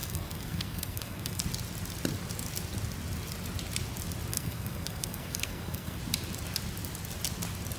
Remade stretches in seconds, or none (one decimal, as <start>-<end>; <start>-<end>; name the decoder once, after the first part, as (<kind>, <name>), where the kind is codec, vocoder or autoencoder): 0.0-1.4 (codec, SNAC); 4.3-6.0